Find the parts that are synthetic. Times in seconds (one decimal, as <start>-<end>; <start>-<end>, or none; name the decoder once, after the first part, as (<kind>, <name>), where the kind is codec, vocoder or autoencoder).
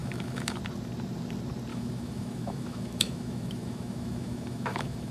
0.0-0.6 (autoencoder, DAC-VAE); 1.7-5.1